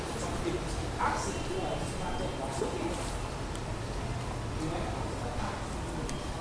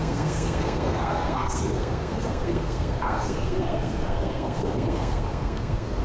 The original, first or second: first